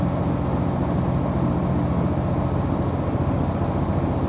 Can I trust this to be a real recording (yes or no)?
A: yes